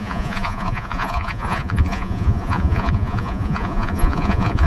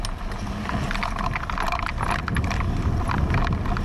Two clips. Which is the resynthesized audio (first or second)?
first